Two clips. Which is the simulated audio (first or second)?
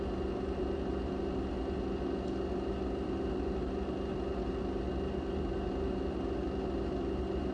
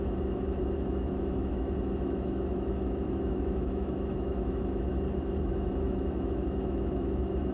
second